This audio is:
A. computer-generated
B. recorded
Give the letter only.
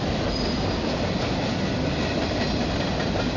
B